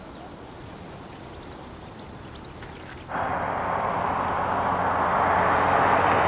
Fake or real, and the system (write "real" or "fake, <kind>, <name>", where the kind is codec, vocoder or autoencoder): real